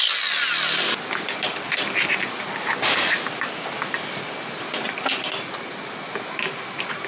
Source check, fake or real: real